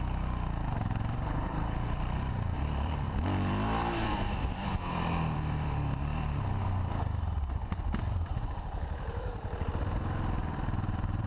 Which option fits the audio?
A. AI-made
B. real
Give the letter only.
A